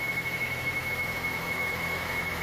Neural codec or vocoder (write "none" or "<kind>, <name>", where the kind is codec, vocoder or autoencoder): autoencoder, DAC-VAE